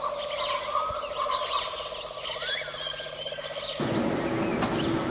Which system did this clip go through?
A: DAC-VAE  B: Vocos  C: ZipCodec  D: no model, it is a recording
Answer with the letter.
D